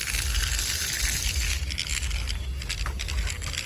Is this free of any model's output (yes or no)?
yes